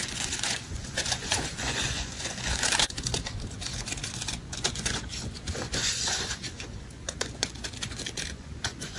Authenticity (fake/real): fake